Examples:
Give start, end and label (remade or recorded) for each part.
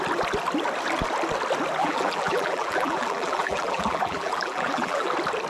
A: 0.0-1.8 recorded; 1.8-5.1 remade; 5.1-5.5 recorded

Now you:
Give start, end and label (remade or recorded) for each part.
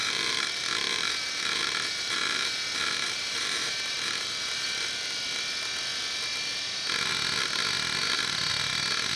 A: 0.0-4.9 remade; 4.9-9.2 recorded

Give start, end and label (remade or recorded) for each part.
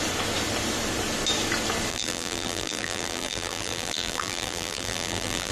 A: 0.0-1.9 recorded; 1.9-5.5 remade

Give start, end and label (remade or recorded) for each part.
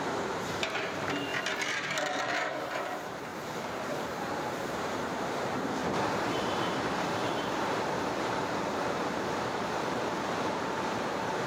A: 0.0-1.3 remade; 1.3-2.1 recorded; 2.1-5.8 remade; 5.8-6.4 recorded; 6.4-7.2 remade; 7.2-8.2 recorded; 8.2-11.5 remade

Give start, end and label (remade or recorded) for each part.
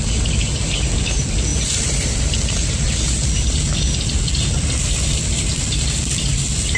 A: 0.0-1.5 recorded; 1.5-3.1 remade; 3.1-6.8 recorded